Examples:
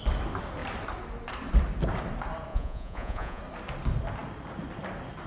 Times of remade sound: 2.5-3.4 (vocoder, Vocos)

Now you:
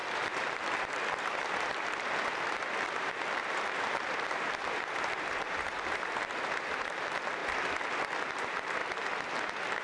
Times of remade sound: 0.0-7.4 (vocoder, BigVGAN v2); 8.3-8.8

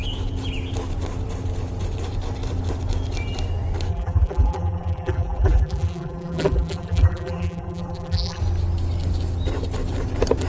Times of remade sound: 3.9-8.4 (vocoder, BigVGAN v2)